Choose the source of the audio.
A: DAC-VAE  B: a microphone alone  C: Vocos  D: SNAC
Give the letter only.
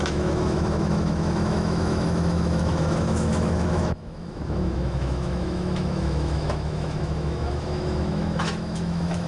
A